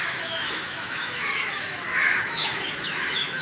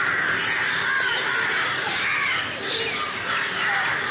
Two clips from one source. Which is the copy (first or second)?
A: first